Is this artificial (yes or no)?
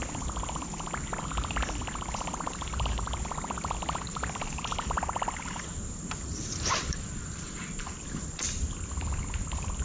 yes